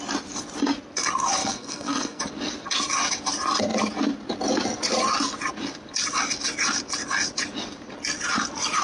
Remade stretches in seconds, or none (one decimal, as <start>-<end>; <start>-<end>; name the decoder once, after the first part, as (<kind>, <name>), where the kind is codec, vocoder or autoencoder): 1.4-2.2 (codec, SNAC)